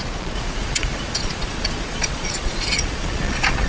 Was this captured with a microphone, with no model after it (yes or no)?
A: no